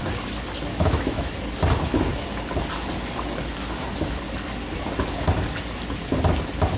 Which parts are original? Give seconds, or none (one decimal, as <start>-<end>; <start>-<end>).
0.0-0.7; 1.3-6.8